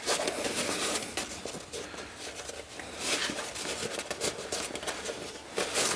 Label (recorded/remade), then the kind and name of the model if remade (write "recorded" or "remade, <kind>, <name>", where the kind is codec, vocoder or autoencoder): recorded